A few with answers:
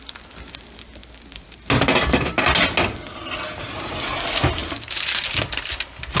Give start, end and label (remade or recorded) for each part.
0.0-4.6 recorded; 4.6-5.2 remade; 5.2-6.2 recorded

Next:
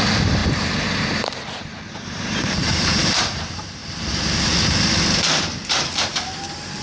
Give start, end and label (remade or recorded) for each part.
0.0-3.8 remade; 3.8-5.2 recorded; 5.2-6.8 remade

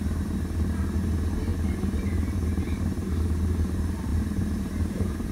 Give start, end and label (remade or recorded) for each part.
0.0-1.5 recorded; 1.5-3.2 remade; 3.2-4.1 recorded; 4.1-5.3 remade

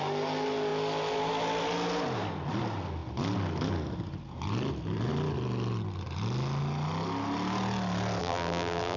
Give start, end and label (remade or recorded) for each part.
0.0-8.2 recorded; 8.2-9.0 remade

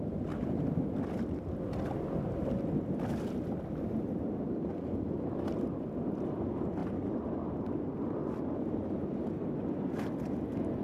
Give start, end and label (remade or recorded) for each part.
0.0-10.8 recorded

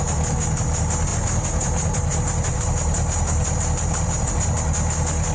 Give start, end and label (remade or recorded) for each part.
0.0-1.1 recorded; 1.1-4.3 remade; 4.3-5.3 recorded

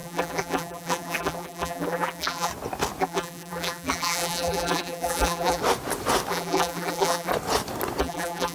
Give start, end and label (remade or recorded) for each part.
0.0-2.5 remade; 2.5-3.0 recorded; 3.0-5.6 remade; 5.6-6.3 recorded; 6.3-7.3 remade; 7.3-8.0 recorded; 8.0-8.5 remade